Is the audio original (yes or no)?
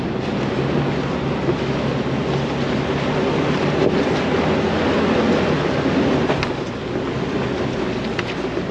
yes